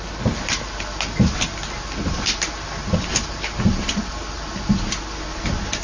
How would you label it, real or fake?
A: real